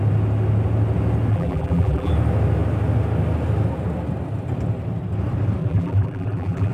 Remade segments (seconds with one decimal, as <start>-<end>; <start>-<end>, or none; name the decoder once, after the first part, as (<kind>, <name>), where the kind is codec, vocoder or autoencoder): 1.3-2.1 (vocoder, BigVGAN v2); 5.6-6.7